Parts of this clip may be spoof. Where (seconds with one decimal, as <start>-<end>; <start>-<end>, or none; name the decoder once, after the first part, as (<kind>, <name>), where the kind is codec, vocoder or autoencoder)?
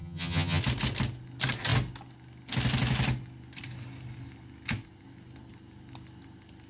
0.0-0.6 (vocoder, HiFi-GAN)